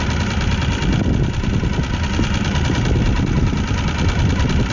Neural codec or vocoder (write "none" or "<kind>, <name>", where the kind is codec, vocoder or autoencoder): none